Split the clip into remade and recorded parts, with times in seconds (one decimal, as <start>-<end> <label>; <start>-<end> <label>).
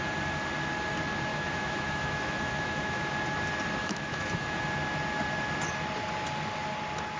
0.0-1.3 recorded; 1.3-3.1 remade; 3.1-3.8 recorded; 3.8-4.6 remade; 4.6-7.2 recorded